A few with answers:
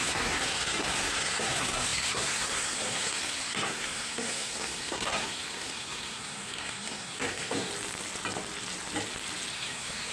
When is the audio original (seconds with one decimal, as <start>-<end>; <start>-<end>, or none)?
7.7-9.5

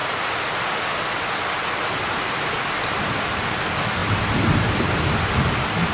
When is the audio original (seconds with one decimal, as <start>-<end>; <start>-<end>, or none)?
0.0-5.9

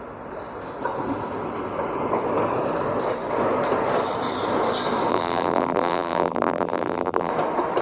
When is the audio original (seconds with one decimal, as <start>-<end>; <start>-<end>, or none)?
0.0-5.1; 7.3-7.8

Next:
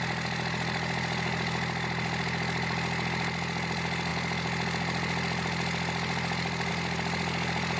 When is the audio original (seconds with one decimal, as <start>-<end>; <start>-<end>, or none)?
0.0-7.8